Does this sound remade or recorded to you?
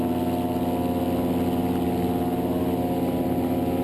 recorded